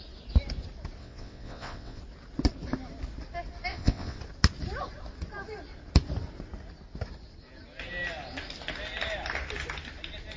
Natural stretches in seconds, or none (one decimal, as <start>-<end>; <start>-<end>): 0.0-1.0; 2.0-3.7; 4.2-10.4